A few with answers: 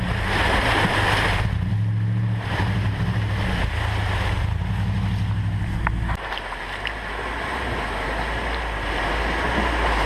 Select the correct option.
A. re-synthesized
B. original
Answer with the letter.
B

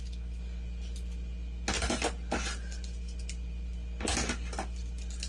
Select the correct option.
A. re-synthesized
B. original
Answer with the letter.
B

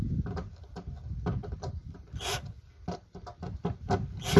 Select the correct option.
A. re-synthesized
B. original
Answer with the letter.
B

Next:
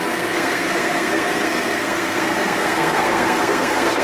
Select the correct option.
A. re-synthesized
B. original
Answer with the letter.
A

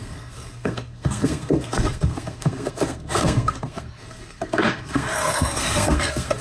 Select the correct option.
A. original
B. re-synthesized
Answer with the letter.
B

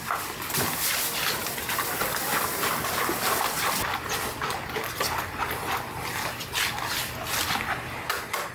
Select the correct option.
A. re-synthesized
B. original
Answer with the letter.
B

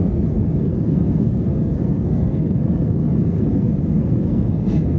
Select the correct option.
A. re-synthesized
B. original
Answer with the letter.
A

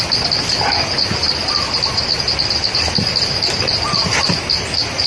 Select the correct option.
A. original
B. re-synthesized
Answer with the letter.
A